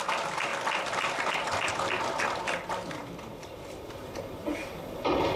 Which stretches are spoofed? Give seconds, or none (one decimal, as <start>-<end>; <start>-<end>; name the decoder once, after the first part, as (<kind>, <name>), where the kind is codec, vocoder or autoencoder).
none